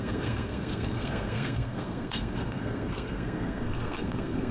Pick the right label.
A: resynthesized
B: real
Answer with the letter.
A